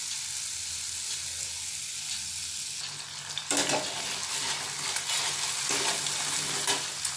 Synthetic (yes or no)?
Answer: no